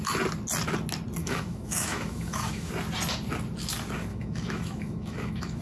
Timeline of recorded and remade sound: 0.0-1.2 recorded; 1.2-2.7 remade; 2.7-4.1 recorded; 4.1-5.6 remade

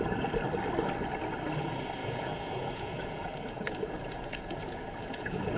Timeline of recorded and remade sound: 0.0-2.0 recorded; 2.0-5.6 remade